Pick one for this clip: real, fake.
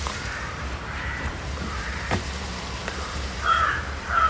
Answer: fake